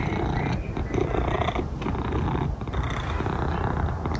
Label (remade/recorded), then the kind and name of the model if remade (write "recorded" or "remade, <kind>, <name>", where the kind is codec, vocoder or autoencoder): recorded